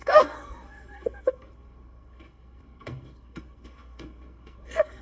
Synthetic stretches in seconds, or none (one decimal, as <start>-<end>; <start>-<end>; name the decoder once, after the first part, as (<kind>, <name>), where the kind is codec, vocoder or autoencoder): 0.0-5.0 (codec, SNAC)